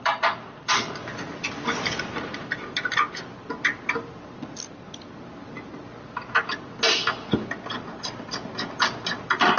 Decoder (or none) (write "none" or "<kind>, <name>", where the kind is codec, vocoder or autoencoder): none